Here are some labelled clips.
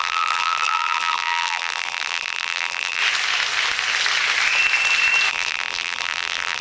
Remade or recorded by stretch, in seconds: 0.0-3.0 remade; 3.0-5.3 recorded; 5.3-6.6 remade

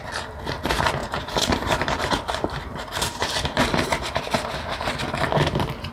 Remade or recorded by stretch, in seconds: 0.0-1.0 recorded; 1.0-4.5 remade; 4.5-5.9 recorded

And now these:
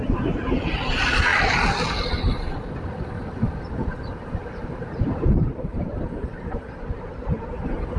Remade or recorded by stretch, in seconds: 0.0-4.4 recorded; 4.4-7.4 remade; 7.4-8.0 recorded